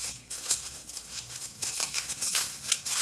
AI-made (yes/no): yes